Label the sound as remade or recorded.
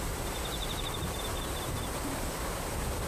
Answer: remade